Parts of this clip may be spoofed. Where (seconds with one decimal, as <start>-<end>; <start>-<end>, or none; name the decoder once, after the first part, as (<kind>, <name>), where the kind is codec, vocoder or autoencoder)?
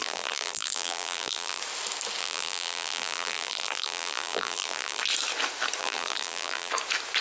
0.0-1.6 (vocoder, BigVGAN v2); 2.2-5.0; 5.8-6.7